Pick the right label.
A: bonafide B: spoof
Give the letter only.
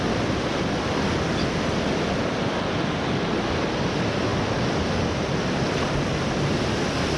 A